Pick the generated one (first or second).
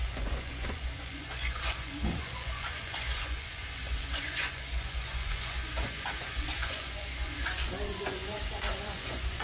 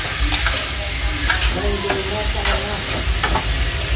first